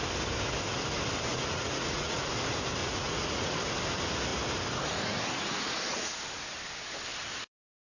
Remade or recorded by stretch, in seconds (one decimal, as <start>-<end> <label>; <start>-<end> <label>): 0.0-1.3 recorded; 1.3-2.3 remade; 2.3-2.8 recorded; 2.8-3.5 remade; 3.5-7.8 recorded